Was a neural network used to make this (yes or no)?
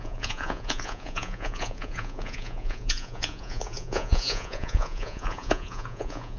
yes